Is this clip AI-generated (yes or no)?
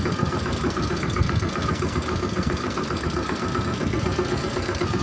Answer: yes